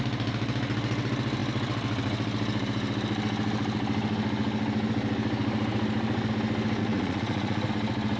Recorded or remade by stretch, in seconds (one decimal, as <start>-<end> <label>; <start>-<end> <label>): 0.0-6.8 recorded; 6.8-7.7 remade; 7.7-8.2 recorded